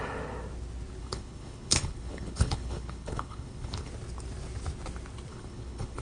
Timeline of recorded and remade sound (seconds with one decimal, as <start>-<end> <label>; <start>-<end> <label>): 0.0-1.0 recorded; 1.0-3.9 remade; 3.9-5.3 recorded; 5.3-6.0 remade

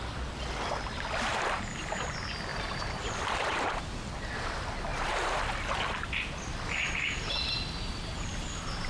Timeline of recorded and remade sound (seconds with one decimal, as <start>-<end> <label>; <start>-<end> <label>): 0.0-1.3 recorded; 1.3-2.0 remade; 2.0-2.5 recorded; 2.5-4.1 remade; 4.1-4.9 recorded; 4.9-5.4 remade; 5.4-8.9 recorded

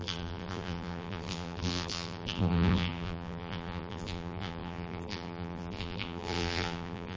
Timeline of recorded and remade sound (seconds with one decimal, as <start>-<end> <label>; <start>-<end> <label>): 0.0-7.2 remade

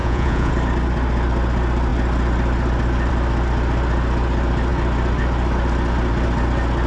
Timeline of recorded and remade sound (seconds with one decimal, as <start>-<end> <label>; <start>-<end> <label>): 0.0-0.5 remade; 0.5-6.9 recorded

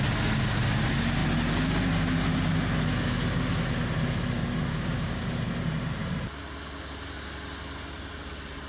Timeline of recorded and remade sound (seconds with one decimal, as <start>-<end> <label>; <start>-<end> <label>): 0.0-4.7 recorded; 4.7-5.2 remade; 5.2-8.7 recorded

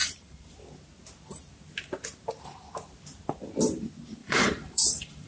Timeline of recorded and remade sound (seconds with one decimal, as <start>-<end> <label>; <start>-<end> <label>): 0.0-0.5 remade; 0.5-4.2 recorded; 4.2-5.3 remade

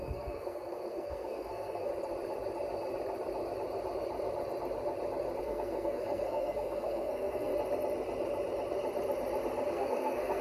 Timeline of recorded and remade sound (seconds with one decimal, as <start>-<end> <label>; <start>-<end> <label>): 0.0-1.9 remade; 1.9-5.4 recorded; 5.4-7.5 remade; 7.5-9.7 recorded; 9.7-10.4 remade

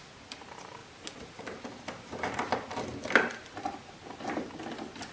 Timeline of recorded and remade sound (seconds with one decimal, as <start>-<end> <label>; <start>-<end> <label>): 0.0-5.1 recorded